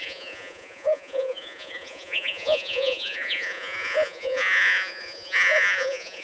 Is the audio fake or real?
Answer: fake